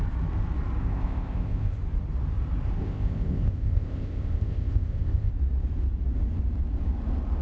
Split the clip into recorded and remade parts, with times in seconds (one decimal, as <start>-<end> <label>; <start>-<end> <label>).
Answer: 0.0-0.8 recorded; 0.8-1.8 remade; 1.8-2.8 recorded; 2.8-5.3 remade; 5.3-7.4 recorded